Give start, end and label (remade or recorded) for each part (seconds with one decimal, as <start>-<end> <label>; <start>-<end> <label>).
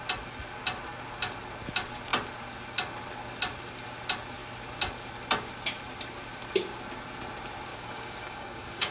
0.0-7.7 recorded; 7.7-8.9 remade